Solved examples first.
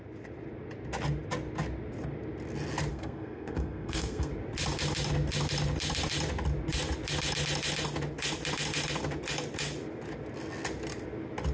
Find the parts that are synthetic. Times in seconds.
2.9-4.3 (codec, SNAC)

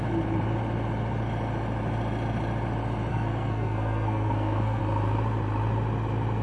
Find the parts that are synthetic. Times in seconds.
3.1-4.8 (codec, SNAC)

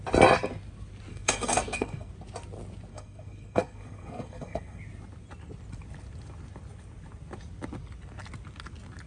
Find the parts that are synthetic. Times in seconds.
1.1-2.1 (codec, SNAC); 2.9-4.8

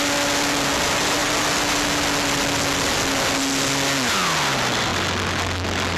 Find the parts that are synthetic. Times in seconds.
none

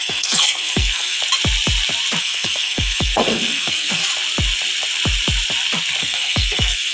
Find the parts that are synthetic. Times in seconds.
0.0-1.2 (codec, SNAC); 2.2-4.0; 6.0-6.9

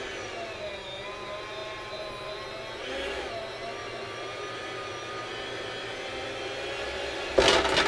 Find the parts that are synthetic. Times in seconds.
none

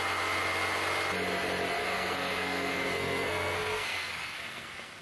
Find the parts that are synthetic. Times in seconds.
1.8-5.0 (codec, SNAC)